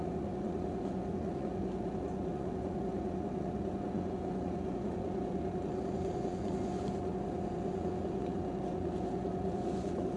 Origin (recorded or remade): remade